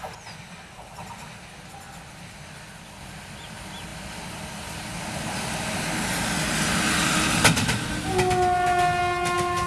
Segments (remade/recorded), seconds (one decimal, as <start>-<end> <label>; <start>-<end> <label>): 0.0-9.7 recorded